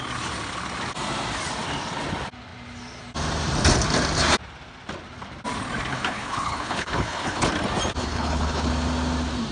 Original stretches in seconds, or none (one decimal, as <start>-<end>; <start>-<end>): 0.0-5.9; 7.5-8.0; 8.7-9.5

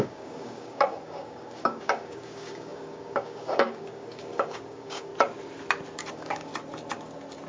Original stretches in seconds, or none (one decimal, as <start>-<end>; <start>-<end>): 5.1-6.1; 6.5-7.5

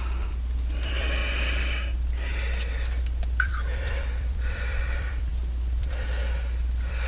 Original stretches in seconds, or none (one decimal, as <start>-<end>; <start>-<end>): 1.2-3.0

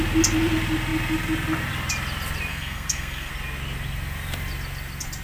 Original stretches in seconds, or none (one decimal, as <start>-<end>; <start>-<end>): 0.0-2.5; 3.3-5.2

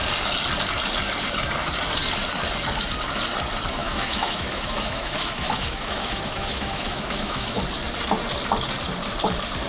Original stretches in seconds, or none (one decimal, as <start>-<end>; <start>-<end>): 0.0-3.8; 7.6-9.7

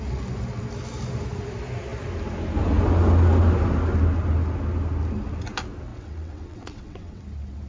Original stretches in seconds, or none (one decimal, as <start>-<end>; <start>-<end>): 0.0-5.9; 7.2-7.7

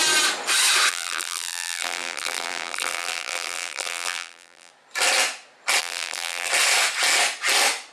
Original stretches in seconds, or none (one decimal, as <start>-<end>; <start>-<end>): 0.0-0.9; 4.7-5.8; 6.5-7.9